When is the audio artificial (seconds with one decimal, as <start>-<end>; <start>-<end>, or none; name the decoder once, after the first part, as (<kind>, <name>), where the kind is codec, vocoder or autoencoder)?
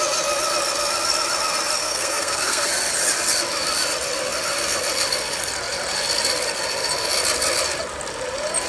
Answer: 1.8-2.7 (codec, SNAC)